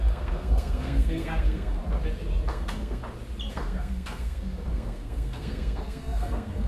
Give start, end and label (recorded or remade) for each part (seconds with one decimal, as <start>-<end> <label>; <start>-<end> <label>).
0.0-1.8 remade; 1.8-2.5 recorded; 2.5-3.0 remade; 3.0-3.5 recorded; 3.5-6.7 remade